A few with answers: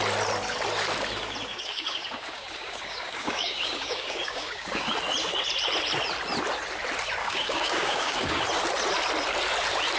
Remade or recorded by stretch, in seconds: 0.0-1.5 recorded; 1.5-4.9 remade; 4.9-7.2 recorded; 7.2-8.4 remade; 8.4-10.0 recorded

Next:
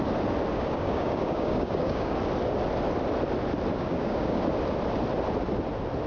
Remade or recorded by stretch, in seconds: 0.0-0.5 recorded; 0.5-2.2 remade; 2.2-3.7 recorded; 3.7-4.5 remade; 4.5-6.1 recorded

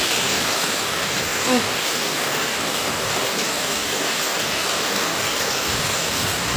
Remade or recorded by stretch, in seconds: 0.0-6.6 remade

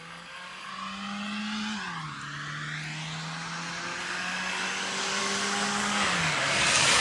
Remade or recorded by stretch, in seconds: 0.0-0.7 remade; 0.7-4.0 recorded; 4.0-7.0 remade